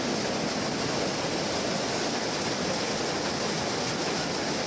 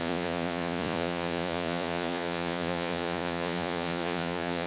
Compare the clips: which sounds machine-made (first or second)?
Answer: second